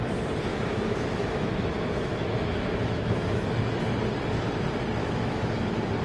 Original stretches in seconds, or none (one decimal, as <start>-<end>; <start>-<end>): 0.0-0.5; 3.8-5.0; 5.5-6.0